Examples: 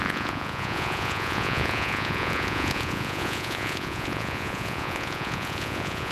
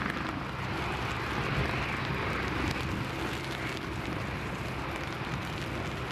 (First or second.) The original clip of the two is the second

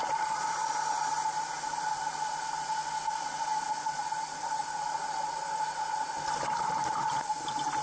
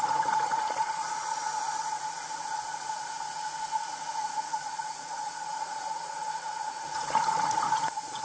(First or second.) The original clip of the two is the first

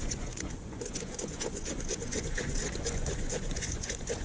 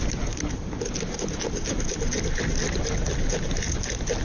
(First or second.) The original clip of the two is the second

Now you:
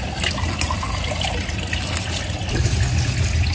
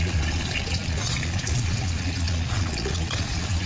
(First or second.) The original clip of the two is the first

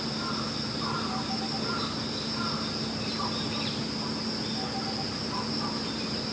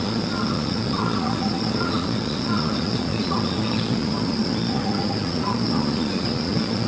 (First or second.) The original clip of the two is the first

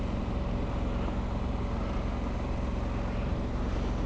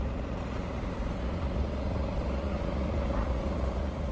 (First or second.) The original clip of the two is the first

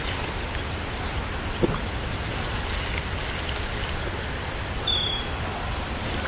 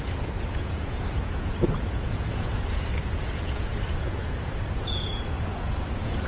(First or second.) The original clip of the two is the first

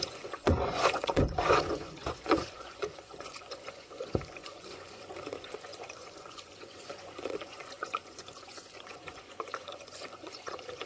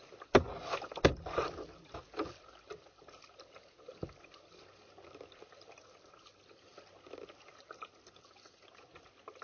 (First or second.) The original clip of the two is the second